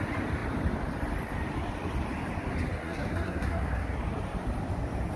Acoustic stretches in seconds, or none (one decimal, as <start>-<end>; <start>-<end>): 0.0-2.8; 4.0-5.2